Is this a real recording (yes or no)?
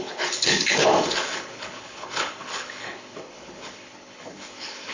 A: no